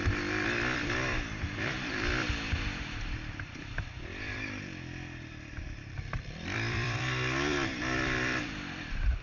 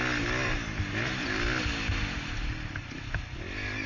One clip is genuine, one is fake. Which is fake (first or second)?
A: first